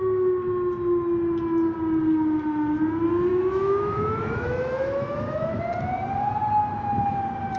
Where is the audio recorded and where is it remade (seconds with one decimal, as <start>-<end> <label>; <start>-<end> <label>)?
0.0-3.3 recorded; 3.3-5.6 remade; 5.6-7.6 recorded